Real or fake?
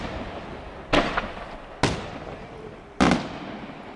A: real